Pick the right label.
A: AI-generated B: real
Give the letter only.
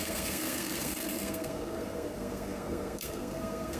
A